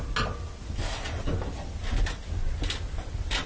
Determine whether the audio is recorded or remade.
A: recorded